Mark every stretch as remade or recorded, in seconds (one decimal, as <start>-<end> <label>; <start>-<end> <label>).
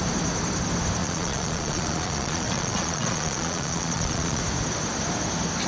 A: 0.0-1.0 recorded; 1.0-4.4 remade; 4.4-5.7 recorded